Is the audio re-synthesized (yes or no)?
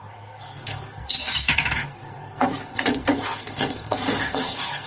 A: yes